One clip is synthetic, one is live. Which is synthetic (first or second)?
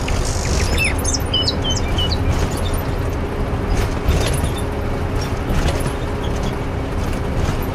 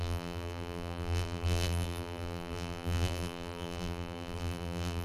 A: second